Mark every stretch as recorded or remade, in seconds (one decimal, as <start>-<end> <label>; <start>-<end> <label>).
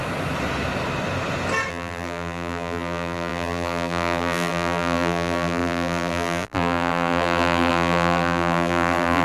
0.0-1.7 recorded; 1.7-9.2 remade